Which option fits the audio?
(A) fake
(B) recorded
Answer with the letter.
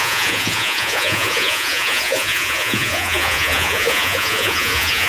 A